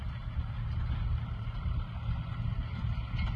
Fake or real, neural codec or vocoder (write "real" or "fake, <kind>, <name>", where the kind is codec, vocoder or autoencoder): real